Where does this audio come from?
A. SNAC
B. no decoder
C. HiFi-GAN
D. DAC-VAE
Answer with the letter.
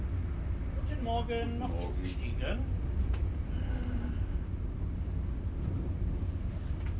B